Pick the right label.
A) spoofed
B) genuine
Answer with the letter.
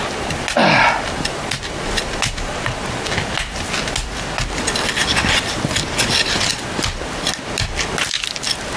B